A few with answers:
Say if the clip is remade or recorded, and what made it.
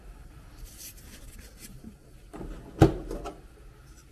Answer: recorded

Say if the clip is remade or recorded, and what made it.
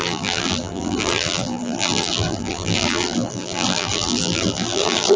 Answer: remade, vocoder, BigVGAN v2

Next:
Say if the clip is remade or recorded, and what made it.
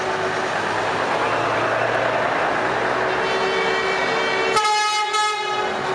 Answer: recorded